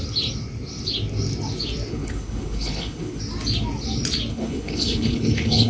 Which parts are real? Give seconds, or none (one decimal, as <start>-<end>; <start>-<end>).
0.0-1.9; 3.2-4.3